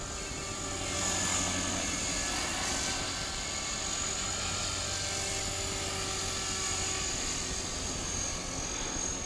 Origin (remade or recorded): recorded